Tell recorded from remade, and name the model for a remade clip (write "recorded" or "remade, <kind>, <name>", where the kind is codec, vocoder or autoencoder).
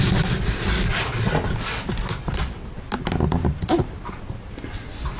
recorded